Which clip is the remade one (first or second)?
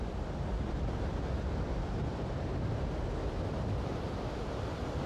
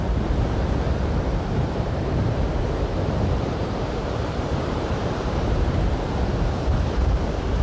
second